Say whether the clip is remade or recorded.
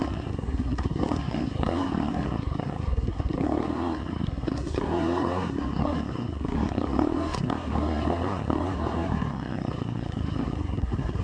remade